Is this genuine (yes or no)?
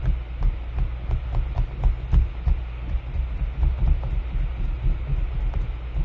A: yes